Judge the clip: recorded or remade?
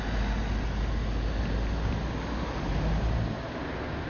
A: recorded